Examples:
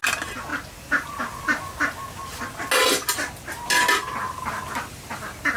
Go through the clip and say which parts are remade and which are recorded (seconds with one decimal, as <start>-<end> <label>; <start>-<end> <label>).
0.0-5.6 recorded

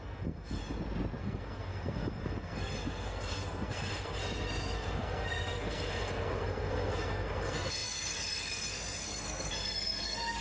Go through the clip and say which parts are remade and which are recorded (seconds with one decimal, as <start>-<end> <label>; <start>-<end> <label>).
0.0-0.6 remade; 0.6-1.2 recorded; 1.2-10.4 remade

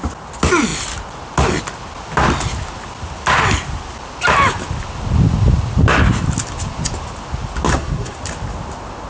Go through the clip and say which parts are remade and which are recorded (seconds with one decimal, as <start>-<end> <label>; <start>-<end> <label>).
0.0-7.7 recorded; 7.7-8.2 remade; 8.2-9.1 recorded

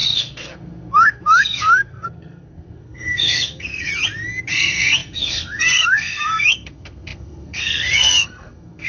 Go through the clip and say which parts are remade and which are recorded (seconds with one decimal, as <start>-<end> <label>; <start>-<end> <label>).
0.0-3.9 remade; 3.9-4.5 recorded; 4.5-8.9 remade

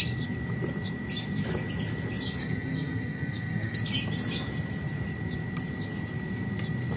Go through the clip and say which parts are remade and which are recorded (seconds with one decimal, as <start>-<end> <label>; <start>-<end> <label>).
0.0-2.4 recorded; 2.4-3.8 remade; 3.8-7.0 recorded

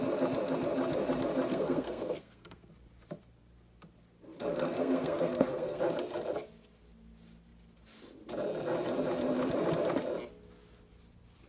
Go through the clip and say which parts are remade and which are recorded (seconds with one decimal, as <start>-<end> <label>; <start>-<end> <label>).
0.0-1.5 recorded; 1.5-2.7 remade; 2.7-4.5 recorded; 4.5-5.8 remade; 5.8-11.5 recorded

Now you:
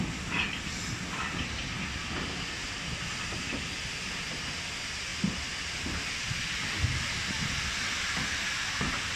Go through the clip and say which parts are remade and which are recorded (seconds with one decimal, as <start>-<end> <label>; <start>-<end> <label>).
0.0-9.2 recorded